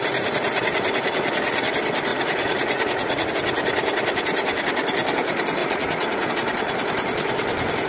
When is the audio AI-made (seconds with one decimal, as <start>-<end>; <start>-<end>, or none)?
2.1-3.3; 5.6-6.3